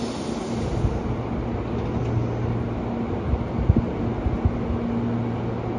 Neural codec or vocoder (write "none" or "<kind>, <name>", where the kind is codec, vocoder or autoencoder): none